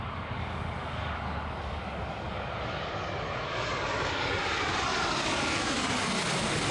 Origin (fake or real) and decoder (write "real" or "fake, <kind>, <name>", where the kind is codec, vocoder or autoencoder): fake, codec, DAC